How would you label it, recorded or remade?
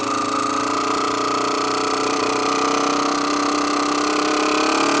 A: recorded